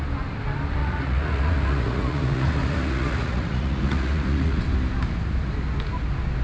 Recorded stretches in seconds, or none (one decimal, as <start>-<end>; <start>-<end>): 0.0-0.8; 4.6-6.4